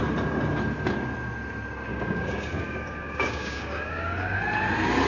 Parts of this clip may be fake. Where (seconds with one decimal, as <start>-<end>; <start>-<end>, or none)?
1.9-4.4